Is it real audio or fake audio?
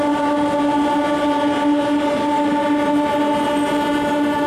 real